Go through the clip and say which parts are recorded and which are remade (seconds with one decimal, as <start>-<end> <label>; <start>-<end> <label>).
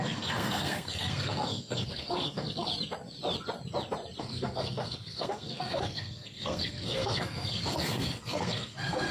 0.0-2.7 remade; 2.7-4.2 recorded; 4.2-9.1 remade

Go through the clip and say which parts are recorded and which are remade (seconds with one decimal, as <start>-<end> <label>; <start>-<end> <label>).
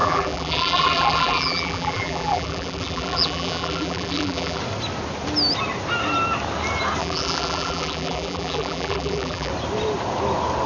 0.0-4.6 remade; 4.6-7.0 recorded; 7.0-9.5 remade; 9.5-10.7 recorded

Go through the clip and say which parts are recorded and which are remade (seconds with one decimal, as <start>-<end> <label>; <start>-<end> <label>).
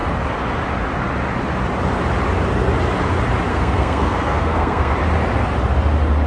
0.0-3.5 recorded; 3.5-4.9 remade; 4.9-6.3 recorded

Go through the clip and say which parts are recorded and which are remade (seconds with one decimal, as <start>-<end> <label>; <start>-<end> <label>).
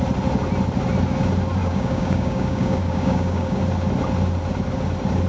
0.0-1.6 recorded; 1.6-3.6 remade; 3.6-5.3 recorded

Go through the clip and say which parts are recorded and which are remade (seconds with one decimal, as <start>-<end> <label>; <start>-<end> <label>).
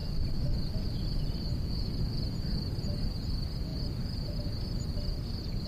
0.0-5.7 recorded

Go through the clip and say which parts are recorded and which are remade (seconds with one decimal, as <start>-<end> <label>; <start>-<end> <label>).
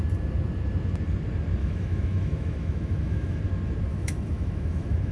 0.0-1.6 recorded; 1.6-3.4 remade; 3.4-3.9 recorded; 3.9-5.1 remade